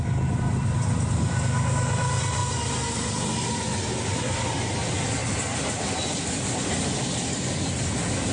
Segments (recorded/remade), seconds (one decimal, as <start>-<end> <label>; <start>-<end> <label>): 0.0-8.3 recorded